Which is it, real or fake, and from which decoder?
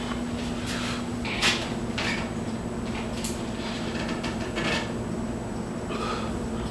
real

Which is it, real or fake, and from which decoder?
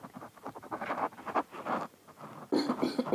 real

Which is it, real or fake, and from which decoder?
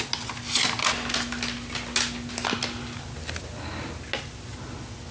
real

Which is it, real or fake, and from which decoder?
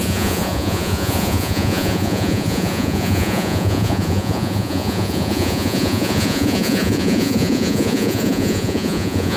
fake, vocoder, Vocos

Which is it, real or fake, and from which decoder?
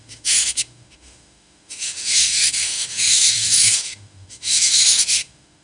fake, autoencoder, DAC-VAE